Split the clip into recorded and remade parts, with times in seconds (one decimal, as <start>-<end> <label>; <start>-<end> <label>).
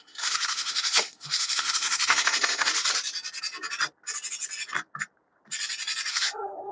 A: 0.0-2.7 remade; 2.7-6.1 recorded; 6.1-6.7 remade